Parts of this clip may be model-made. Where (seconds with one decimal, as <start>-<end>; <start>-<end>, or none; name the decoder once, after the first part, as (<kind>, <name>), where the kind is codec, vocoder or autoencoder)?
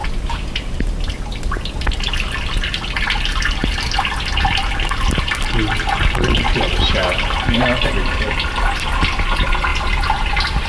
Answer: none